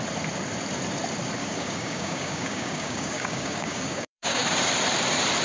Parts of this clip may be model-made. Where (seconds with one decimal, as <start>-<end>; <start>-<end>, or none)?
1.4-4.6